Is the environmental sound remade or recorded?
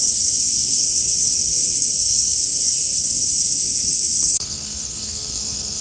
remade